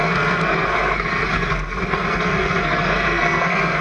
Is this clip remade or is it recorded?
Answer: remade